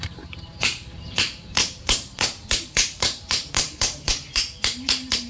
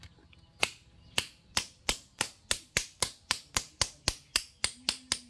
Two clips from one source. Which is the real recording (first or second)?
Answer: second